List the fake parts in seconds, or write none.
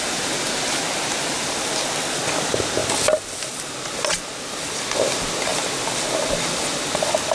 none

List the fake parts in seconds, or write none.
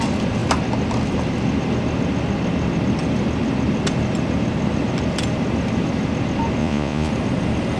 6.6-7.1 (vocoder, Vocos)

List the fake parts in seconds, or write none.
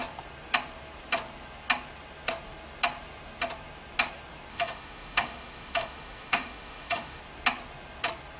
4.5-7.2 (autoencoder, DAC-VAE)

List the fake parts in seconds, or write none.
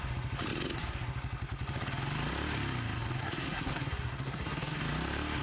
3.2-4.8 (codec, SNAC)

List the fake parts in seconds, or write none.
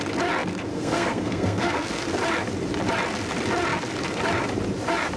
0.7-1.9 (codec, SNAC)